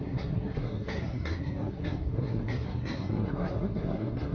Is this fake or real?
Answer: fake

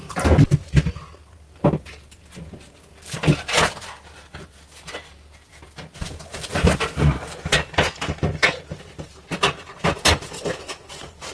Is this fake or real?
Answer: real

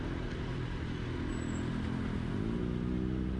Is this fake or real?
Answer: real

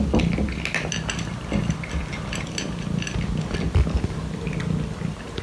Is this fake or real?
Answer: real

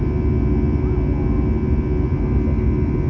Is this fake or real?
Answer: real